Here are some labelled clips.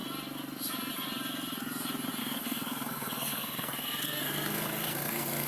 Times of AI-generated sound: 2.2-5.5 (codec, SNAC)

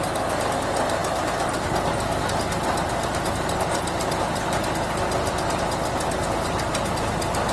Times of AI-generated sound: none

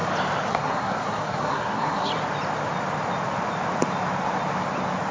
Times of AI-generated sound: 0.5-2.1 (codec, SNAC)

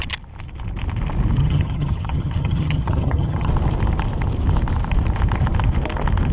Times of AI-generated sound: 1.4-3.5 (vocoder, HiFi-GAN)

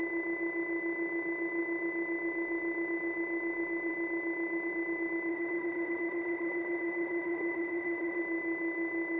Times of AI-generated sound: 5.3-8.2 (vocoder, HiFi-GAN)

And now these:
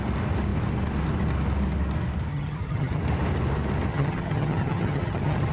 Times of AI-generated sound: 2.3-3.0 (vocoder, HiFi-GAN); 3.9-5.5